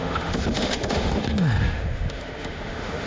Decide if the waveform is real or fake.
fake